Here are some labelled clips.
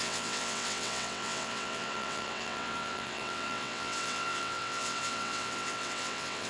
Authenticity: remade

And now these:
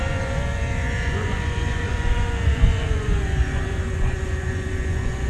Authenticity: remade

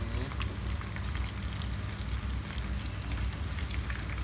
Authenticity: recorded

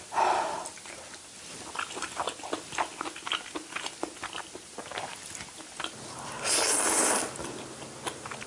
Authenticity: recorded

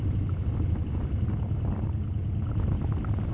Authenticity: recorded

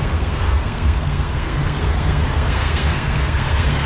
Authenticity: remade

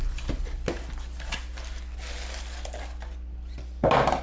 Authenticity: recorded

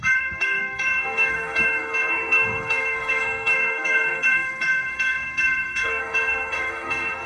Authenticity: remade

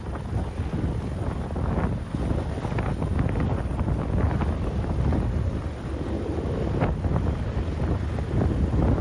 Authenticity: recorded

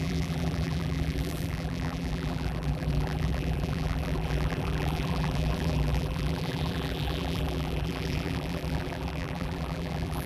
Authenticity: remade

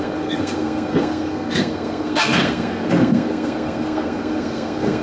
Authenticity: remade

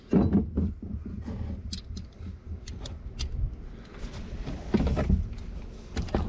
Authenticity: recorded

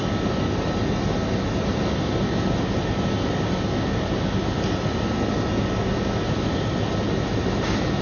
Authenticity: recorded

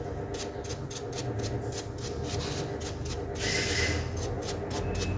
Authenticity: recorded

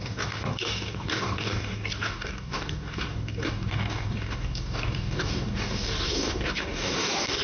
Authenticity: remade